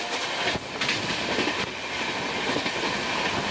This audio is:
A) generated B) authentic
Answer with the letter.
B